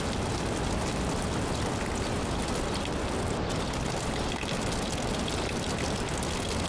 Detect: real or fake real